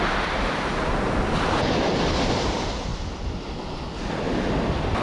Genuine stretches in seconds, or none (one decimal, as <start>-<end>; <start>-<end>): 0.0-5.0